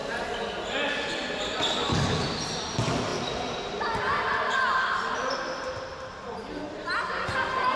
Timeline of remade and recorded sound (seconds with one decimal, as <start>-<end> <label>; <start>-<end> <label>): 0.0-7.8 recorded